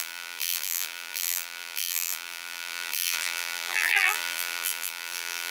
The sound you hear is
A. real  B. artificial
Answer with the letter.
B